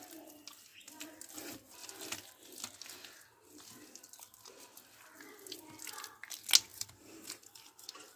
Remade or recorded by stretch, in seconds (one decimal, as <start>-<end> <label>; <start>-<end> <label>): 0.0-0.7 recorded; 0.7-1.2 remade; 1.2-6.7 recorded; 6.7-8.2 remade